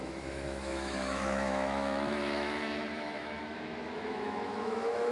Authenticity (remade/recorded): remade